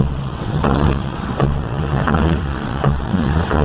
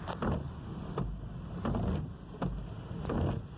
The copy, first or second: first